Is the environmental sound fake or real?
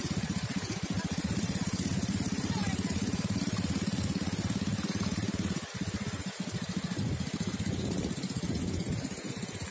real